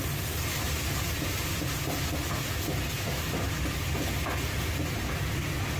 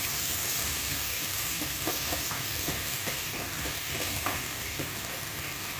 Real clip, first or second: first